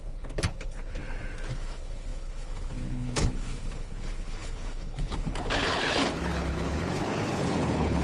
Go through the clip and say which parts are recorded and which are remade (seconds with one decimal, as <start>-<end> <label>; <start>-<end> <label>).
0.0-1.0 remade; 1.0-1.5 recorded; 1.5-8.0 remade